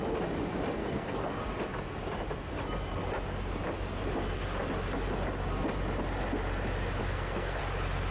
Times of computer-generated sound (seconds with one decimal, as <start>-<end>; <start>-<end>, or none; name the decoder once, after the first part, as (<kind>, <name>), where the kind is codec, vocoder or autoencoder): 0.8-1.4 (codec, SNAC); 7.0-7.6

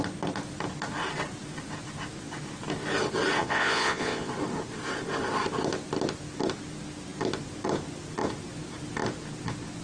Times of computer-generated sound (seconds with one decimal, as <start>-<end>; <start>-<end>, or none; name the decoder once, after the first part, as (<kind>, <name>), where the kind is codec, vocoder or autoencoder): 3.4-4.3 (vocoder, Vocos)

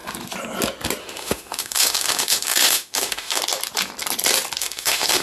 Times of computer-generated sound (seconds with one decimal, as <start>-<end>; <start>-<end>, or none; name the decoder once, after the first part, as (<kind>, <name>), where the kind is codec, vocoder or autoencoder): 1.0-3.4 (autoencoder, DAC-VAE); 4.6-5.2

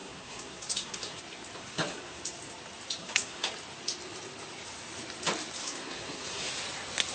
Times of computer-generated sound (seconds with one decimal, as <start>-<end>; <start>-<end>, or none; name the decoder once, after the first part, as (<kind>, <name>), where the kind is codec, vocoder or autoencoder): 0.0-1.2 (codec, SNAC); 1.6-2.2; 3.0-3.5; 5.6-6.5

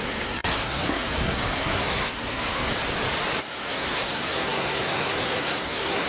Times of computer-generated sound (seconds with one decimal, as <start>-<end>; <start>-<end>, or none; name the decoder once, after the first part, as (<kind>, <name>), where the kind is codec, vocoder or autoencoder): 0.0-2.7 (codec, SNAC); 3.4-6.1